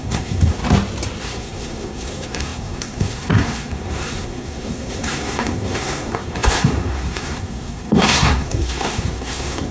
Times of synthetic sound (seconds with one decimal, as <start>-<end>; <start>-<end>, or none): 0.0-0.6; 1.2-9.7